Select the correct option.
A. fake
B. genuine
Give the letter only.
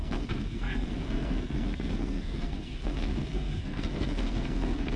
A